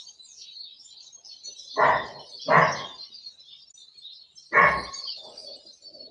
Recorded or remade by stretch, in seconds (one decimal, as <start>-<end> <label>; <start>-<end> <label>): 0.0-6.1 recorded